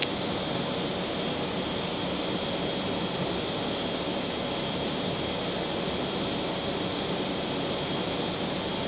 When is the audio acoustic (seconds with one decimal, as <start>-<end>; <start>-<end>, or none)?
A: 0.0-8.9